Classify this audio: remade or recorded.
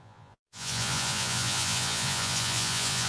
remade